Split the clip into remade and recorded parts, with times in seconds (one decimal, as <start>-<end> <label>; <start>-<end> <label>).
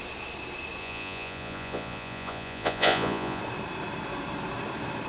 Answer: 0.0-0.8 recorded; 0.8-3.4 remade; 3.4-5.1 recorded